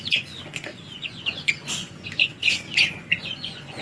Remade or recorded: remade